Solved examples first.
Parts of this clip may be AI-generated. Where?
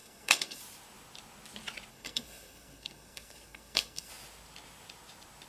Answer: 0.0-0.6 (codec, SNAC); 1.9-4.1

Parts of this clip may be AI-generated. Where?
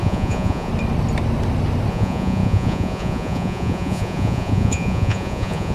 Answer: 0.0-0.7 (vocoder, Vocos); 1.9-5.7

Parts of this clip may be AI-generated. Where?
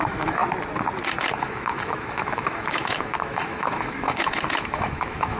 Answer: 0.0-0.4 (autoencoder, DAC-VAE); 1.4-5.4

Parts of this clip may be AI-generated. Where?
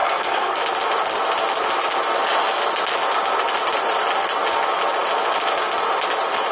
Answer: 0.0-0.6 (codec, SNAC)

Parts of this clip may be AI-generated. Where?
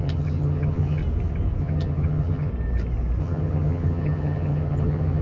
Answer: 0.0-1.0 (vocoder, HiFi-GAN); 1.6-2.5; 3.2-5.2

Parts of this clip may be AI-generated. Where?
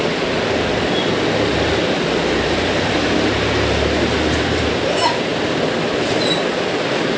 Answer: 1.5-4.7 (vocoder, BigVGAN v2)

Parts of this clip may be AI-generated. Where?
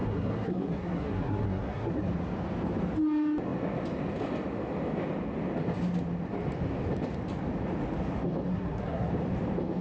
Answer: 0.0-1.9 (codec, SNAC); 8.5-9.1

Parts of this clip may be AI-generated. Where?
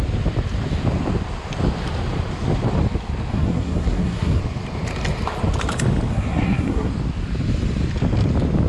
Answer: 3.3-4.4 (codec, SNAC); 6.1-6.9